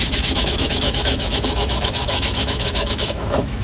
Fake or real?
fake